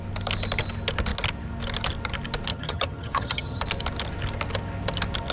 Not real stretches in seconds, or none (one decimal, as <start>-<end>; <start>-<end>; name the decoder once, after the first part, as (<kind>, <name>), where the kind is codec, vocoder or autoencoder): 2.5-3.6 (vocoder, HiFi-GAN)